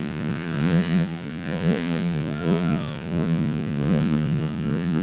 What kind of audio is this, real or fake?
fake